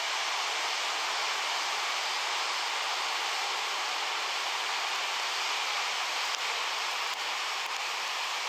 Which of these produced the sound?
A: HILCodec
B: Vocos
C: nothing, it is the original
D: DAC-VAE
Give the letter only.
C